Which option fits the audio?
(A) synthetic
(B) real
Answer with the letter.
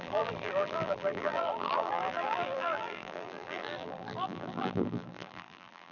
A